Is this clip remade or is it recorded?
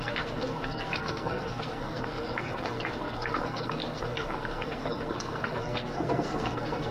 remade